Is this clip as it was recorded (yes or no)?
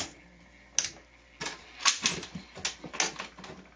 yes